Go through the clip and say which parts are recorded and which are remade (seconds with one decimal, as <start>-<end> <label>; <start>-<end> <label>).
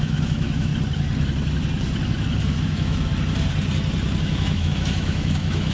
0.0-0.7 remade; 0.7-2.6 recorded; 2.6-3.1 remade; 3.1-4.2 recorded; 4.2-5.7 remade